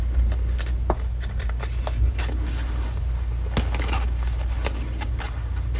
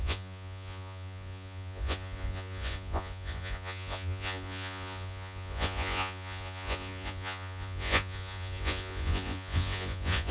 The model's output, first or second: second